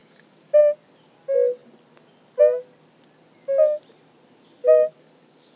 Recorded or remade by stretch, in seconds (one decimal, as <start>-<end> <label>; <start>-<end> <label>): 0.0-0.6 remade; 0.6-4.6 recorded; 4.6-5.6 remade